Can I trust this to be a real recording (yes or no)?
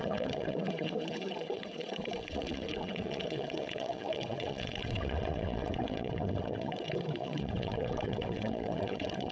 no